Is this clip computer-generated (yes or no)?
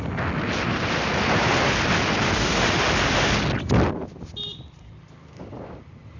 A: no